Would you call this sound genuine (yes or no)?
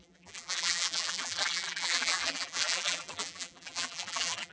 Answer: no